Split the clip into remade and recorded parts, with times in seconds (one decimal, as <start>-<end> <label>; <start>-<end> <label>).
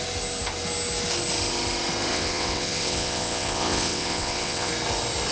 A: 0.0-2.1 recorded; 2.1-4.7 remade; 4.7-5.3 recorded